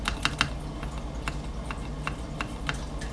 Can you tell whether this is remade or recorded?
recorded